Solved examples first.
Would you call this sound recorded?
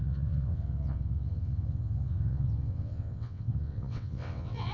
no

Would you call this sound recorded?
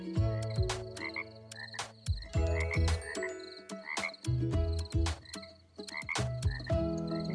yes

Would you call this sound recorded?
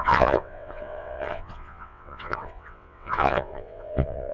no